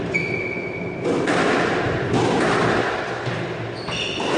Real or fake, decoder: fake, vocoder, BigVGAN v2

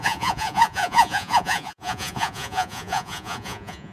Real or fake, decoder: fake, vocoder, Vocos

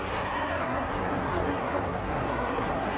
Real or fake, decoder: fake, codec, SNAC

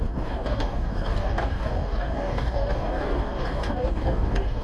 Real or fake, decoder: fake, codec, DAC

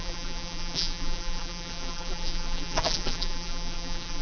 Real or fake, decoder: fake, vocoder, BigVGAN v2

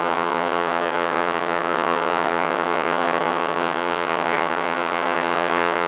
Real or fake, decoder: fake, vocoder, HiFi-GAN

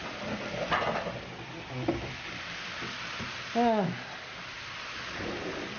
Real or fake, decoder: real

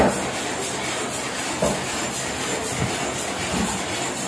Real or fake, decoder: real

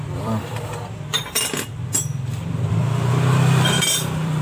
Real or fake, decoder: fake, vocoder, BigVGAN v2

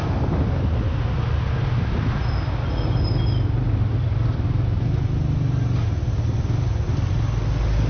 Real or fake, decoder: real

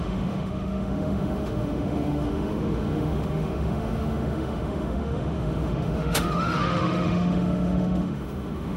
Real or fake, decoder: fake, autoencoder, DAC-VAE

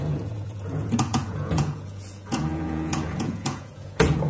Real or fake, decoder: fake, vocoder, Vocos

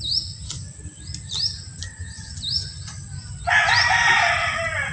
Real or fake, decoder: real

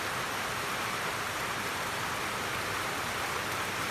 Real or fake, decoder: real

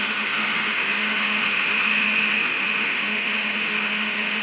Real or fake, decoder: fake, autoencoder, DAC-VAE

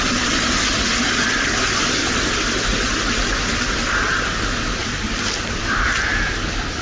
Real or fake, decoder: real